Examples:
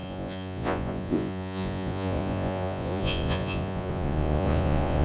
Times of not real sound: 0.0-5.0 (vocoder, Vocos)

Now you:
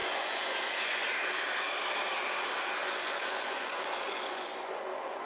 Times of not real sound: 0.0-1.1 (vocoder, Vocos); 2.8-5.3